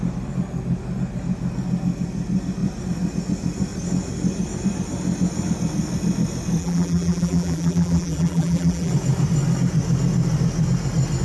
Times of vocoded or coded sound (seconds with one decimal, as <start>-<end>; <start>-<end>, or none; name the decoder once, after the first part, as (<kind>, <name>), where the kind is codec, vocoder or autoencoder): 6.6-8.9 (vocoder, BigVGAN v2)